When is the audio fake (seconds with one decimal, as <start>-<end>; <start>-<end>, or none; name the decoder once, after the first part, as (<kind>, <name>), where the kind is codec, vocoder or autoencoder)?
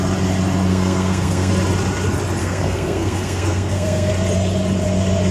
0.7-1.5 (codec, SNAC); 2.4-4.1